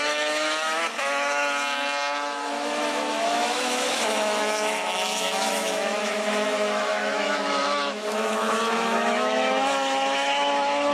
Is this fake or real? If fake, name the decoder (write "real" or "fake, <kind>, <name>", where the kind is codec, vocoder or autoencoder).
fake, autoencoder, DAC-VAE